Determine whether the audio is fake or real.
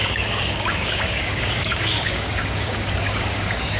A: fake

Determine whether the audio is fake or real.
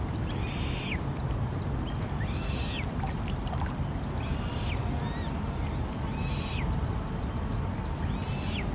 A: real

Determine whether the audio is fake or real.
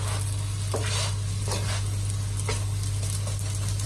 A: real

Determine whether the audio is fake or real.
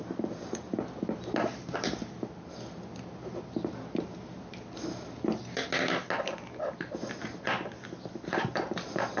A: real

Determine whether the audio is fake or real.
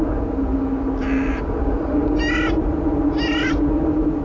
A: real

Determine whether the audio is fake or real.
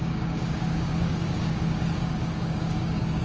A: fake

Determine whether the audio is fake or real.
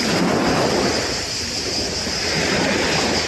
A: real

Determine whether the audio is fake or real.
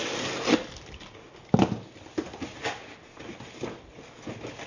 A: real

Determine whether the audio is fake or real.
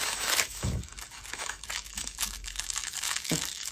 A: fake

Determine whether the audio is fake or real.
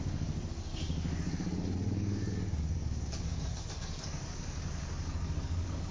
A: fake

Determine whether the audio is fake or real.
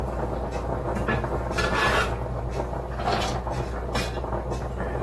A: real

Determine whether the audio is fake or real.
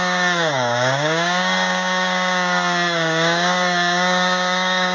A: fake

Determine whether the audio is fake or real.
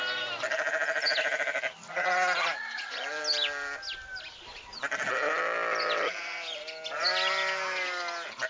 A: real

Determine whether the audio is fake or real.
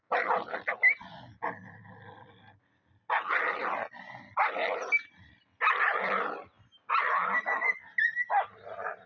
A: real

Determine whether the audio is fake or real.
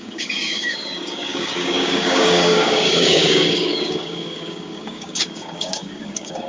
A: fake